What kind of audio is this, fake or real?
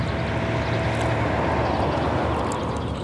real